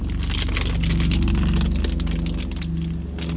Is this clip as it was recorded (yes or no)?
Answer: yes